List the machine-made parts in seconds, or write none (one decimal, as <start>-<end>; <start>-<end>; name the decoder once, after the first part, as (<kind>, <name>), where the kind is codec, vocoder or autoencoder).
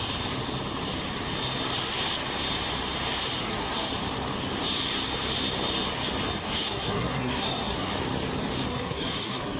3.4-3.9 (codec, SNAC); 6.4-7.9; 8.7-9.6